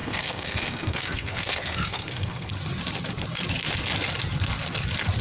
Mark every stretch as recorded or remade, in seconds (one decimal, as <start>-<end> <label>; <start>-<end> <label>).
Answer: 0.0-2.5 remade; 2.5-5.2 recorded